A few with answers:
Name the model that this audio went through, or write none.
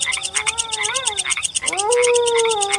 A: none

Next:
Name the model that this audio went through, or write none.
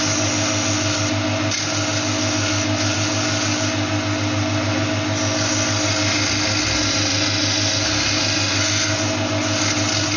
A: none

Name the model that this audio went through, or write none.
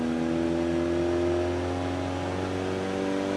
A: none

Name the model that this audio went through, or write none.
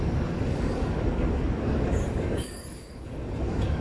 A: codec, DAC